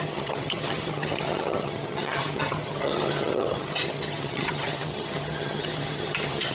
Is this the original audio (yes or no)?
no